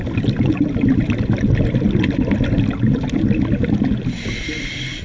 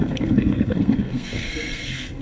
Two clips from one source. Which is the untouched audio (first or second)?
first